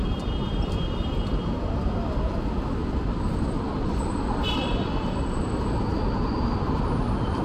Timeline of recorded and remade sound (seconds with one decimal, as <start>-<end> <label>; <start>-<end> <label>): 0.0-1.9 remade; 1.9-2.8 recorded; 2.8-7.4 remade